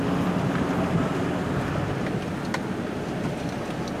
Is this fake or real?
real